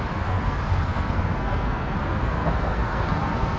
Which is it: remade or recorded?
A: remade